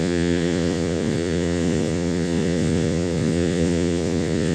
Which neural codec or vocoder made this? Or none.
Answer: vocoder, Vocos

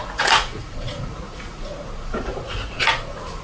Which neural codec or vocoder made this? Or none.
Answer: vocoder, Vocos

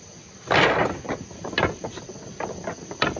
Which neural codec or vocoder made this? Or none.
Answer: none